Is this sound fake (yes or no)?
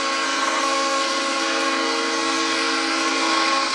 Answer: yes